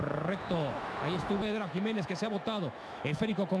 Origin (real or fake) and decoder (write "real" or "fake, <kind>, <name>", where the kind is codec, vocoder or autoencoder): fake, autoencoder, DAC-VAE